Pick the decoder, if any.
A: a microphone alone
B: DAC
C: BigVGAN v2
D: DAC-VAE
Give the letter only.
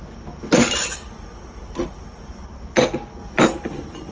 A